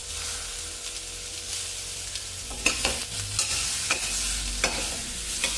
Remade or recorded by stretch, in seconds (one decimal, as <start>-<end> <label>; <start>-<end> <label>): 0.0-2.4 recorded; 2.4-3.0 remade; 3.0-3.5 recorded; 3.5-4.0 remade; 4.0-4.9 recorded; 4.9-5.6 remade